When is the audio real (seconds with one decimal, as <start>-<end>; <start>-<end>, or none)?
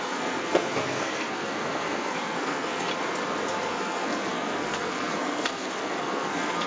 2.9-3.7